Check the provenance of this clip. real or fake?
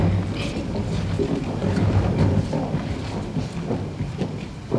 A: real